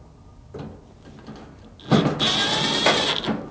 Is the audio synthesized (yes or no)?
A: no